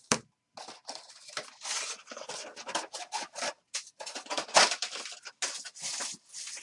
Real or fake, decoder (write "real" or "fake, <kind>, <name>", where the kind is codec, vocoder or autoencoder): real